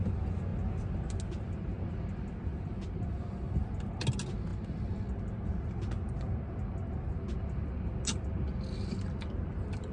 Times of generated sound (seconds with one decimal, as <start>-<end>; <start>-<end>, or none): none